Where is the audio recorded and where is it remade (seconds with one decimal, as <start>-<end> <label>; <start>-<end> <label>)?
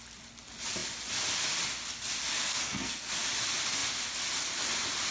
0.0-2.5 recorded; 2.5-3.1 remade; 3.1-5.1 recorded